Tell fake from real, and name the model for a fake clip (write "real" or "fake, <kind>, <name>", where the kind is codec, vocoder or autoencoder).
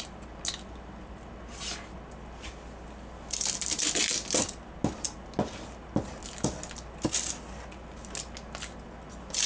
real